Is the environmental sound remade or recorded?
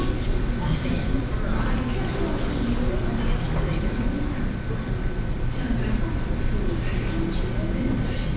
recorded